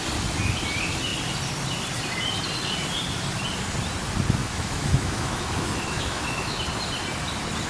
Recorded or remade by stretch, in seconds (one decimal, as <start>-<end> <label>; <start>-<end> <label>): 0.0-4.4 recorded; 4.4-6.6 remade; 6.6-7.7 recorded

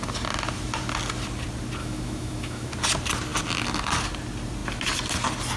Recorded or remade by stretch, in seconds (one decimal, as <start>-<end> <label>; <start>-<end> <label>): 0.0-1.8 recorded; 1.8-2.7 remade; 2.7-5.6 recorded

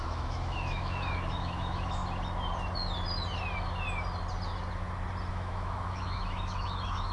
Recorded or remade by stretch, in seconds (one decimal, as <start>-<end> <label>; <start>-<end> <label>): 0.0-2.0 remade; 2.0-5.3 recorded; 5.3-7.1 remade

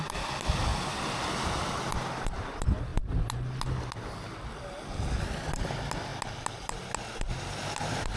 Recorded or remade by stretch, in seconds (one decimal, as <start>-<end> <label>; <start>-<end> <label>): 0.0-8.2 recorded

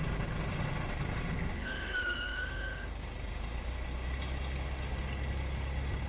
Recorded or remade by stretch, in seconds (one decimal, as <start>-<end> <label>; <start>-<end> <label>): 0.0-1.5 recorded; 1.5-2.9 remade; 2.9-6.1 recorded

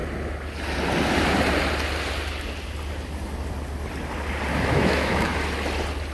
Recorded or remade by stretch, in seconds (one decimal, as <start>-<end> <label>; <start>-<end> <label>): 0.0-4.5 recorded; 4.5-5.3 remade; 5.3-6.1 recorded

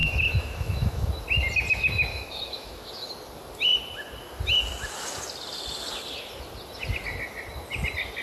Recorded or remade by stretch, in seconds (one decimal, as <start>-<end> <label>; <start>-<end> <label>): 0.0-1.1 remade; 1.1-2.1 recorded; 2.1-2.9 remade; 2.9-8.2 recorded

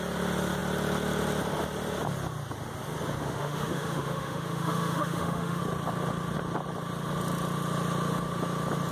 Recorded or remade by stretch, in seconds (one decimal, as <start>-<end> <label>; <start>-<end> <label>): 0.0-3.2 recorded; 3.2-5.6 remade; 5.6-8.9 recorded